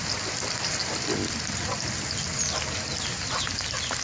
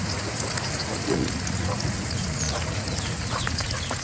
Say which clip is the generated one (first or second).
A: second